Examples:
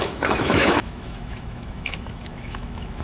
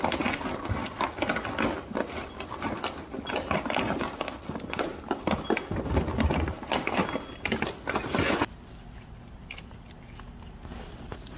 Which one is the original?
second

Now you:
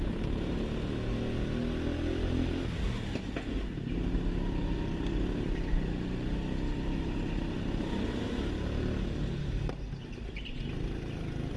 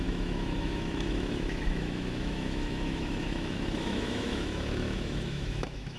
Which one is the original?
first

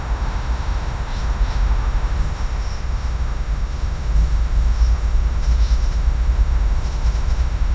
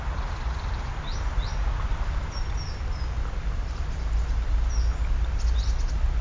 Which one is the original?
second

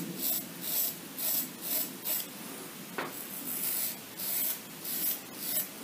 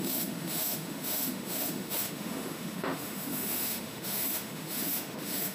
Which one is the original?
first